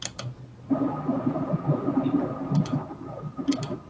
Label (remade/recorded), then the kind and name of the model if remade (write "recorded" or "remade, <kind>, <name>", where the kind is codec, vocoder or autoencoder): recorded